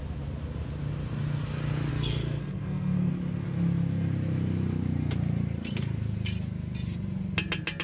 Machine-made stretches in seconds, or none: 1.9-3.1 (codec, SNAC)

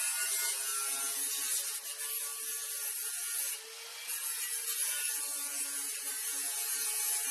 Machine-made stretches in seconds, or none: none